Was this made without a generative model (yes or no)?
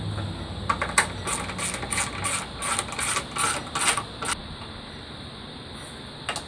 yes